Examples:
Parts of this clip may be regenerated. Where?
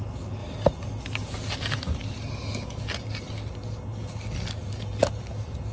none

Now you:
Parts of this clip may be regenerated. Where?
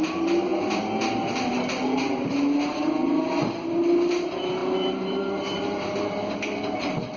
4.6-5.6 (vocoder, BigVGAN v2)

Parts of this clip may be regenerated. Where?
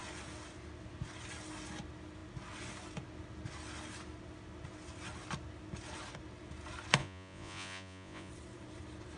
7.0-8.3 (vocoder, Vocos)